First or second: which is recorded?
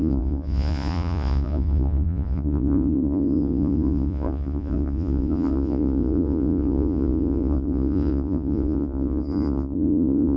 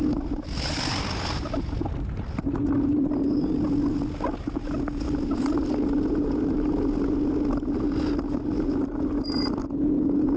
second